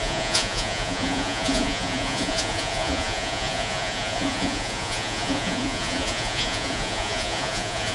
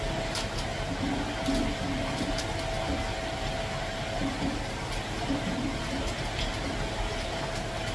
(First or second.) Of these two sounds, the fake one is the first